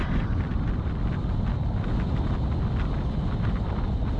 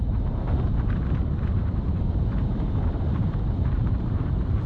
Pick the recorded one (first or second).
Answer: first